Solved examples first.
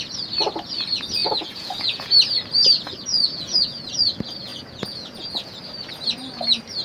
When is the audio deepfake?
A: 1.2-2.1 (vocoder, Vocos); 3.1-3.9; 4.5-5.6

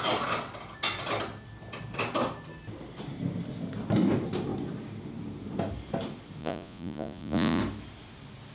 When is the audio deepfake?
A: 6.4-7.6 (vocoder, Vocos)

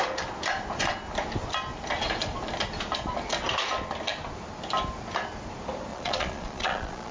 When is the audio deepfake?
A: 5.9-7.1 (vocoder, Vocos)

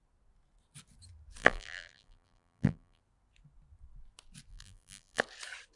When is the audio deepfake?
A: 1.4-3.0 (vocoder, BigVGAN v2); 4.5-5.2

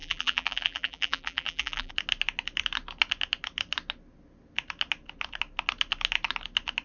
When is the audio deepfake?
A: 0.0-1.9 (vocoder, BigVGAN v2)